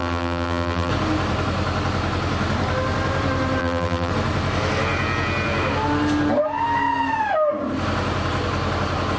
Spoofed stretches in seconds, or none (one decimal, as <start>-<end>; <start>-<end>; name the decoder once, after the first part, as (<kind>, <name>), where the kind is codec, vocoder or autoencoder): 0.0-0.9 (vocoder, BigVGAN v2); 3.6-4.1